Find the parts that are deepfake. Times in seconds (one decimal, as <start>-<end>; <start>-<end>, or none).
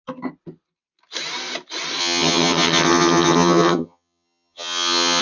2.0-5.2